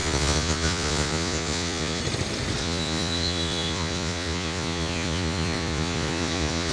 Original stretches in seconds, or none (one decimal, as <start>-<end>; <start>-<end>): 2.0-2.6